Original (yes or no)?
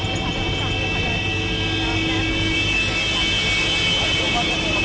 yes